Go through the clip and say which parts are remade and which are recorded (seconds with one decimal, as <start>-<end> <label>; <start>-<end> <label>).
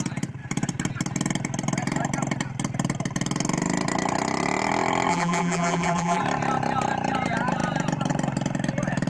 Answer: 0.0-5.1 recorded; 5.1-6.2 remade; 6.2-9.1 recorded